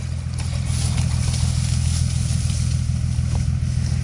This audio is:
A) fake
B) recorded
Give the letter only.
B